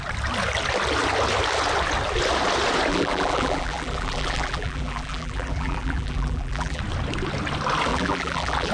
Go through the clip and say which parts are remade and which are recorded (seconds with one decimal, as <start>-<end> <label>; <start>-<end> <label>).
0.0-2.9 recorded; 2.9-6.8 remade; 6.8-7.9 recorded; 7.9-8.7 remade